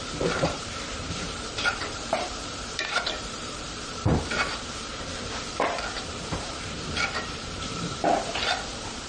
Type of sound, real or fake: fake